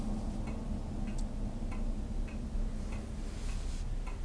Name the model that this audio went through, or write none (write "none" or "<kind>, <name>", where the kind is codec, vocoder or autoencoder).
none